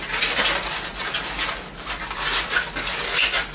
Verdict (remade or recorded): recorded